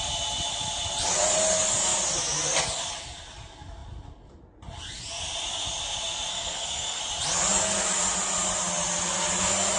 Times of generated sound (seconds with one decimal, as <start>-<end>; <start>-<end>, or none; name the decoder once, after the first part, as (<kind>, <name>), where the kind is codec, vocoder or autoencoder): 6.3-7.0 (codec, SNAC)